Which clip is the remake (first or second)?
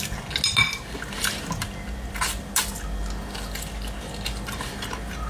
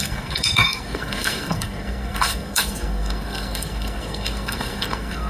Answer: second